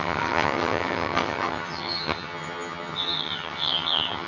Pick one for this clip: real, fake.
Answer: fake